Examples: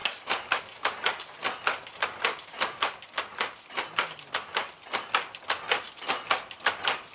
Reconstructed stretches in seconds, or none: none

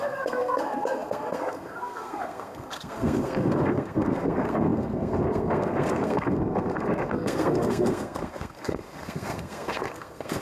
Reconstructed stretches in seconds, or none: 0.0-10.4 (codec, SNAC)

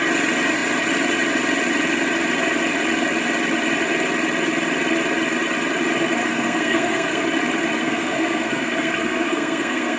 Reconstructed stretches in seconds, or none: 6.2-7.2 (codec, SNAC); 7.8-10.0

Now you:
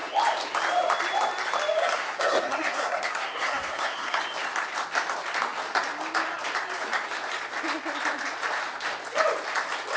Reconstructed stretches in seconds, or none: 1.8-4.2 (codec, SNAC)

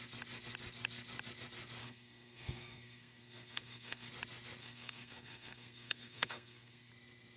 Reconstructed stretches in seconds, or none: 1.8-4.1 (codec, SNAC); 4.6-6.9

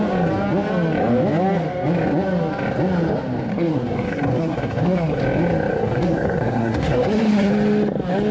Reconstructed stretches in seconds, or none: 3.5-5.2 (codec, SNAC); 5.7-7.5

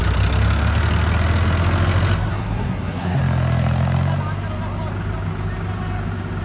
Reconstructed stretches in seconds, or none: 2.3-3.2 (codec, SNAC)